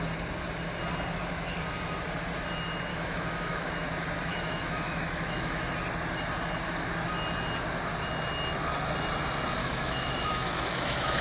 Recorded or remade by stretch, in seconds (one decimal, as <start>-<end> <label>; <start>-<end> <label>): 0.0-2.9 recorded; 2.9-3.7 remade; 3.7-4.3 recorded; 4.3-5.7 remade; 5.7-9.6 recorded; 9.6-11.2 remade